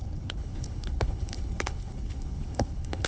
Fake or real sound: fake